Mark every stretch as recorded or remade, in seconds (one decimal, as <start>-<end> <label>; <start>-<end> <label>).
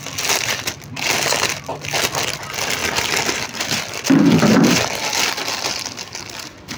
0.0-1.7 recorded; 1.7-2.4 remade; 2.4-2.8 recorded; 2.8-6.8 remade